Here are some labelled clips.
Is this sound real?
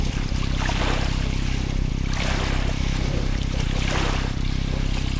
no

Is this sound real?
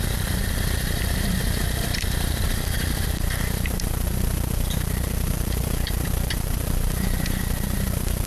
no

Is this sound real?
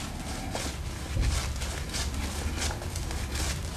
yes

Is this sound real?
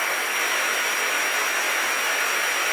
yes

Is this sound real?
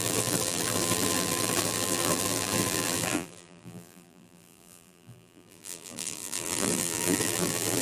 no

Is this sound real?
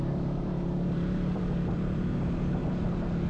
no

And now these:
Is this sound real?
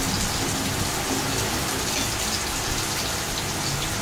yes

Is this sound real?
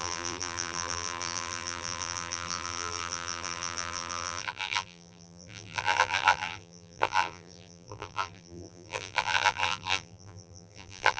no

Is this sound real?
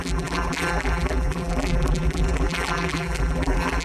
no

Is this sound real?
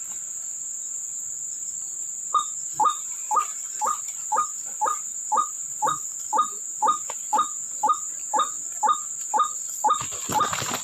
yes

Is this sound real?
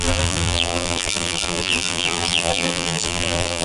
no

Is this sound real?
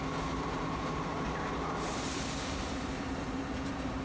no